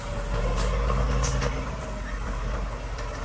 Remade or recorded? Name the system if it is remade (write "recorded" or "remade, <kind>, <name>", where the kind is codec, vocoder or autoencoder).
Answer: recorded